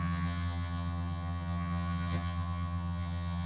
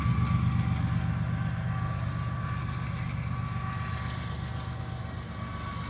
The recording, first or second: second